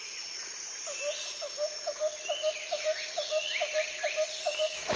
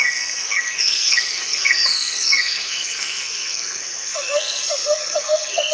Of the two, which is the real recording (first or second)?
first